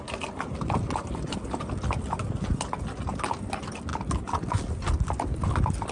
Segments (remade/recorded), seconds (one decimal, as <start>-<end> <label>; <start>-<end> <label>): 0.0-5.9 recorded